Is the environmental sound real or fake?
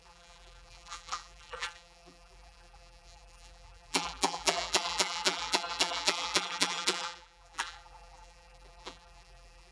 fake